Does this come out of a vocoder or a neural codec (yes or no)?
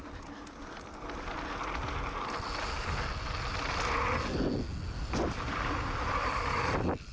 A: no